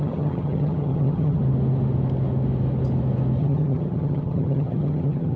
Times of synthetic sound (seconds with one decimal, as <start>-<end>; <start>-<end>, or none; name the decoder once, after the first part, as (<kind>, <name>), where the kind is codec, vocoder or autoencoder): 0.0-1.4 (vocoder, HiFi-GAN); 3.4-5.4